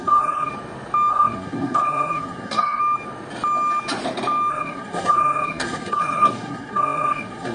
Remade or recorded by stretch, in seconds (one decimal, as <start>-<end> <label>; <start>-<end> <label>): 0.0-0.5 remade; 0.5-1.1 recorded; 1.1-2.8 remade; 2.8-4.5 recorded; 4.5-7.5 remade